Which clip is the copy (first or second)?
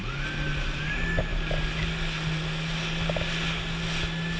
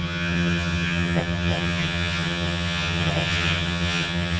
second